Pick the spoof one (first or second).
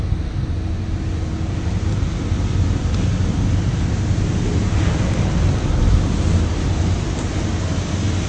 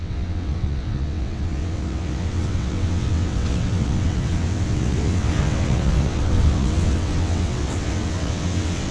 second